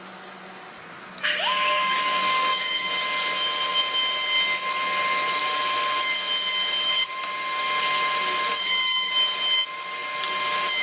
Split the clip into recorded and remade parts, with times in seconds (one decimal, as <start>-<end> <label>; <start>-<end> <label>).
0.0-1.5 recorded; 1.5-2.9 remade; 2.9-8.5 recorded; 8.5-9.1 remade; 9.1-10.8 recorded